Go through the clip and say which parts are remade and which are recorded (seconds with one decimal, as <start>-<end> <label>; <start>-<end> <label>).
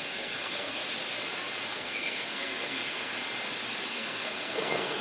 0.0-0.8 remade; 0.8-1.7 recorded; 1.7-3.1 remade; 3.1-3.9 recorded; 3.9-5.0 remade